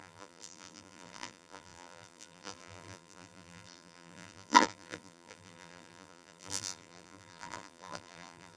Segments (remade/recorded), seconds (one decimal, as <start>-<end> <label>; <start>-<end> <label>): 0.0-8.6 remade

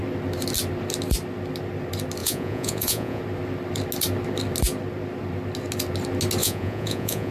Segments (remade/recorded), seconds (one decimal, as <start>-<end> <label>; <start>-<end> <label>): 0.0-2.2 recorded; 2.2-3.2 remade; 3.2-6.4 recorded; 6.4-7.3 remade

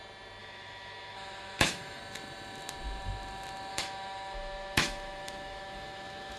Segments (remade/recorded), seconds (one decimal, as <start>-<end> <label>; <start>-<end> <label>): 0.0-0.4 recorded; 0.4-2.0 remade; 2.0-3.7 recorded; 3.7-6.4 remade

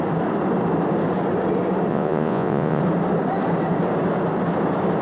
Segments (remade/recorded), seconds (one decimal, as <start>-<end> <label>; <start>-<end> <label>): 0.0-1.9 recorded; 1.9-2.8 remade; 2.8-5.0 recorded

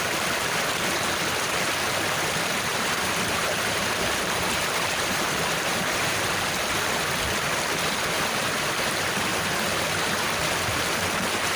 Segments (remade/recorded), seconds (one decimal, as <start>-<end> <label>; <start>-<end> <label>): 0.0-2.7 recorded; 2.7-6.3 remade; 6.3-11.6 recorded

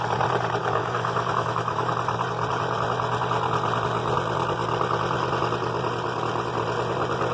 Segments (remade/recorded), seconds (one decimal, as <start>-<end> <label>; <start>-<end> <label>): 0.0-0.6 recorded; 0.6-1.9 remade; 1.9-7.3 recorded

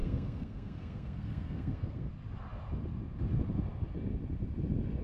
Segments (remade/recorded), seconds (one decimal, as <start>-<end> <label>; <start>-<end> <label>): 0.0-2.1 remade; 2.1-5.0 recorded

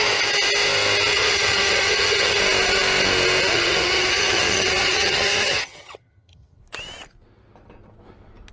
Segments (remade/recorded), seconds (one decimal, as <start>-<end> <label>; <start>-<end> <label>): 0.0-1.1 recorded; 1.1-2.4 remade; 2.4-3.5 recorded; 3.5-6.6 remade; 6.6-8.5 recorded